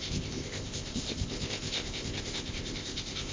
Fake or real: fake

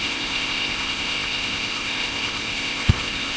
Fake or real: fake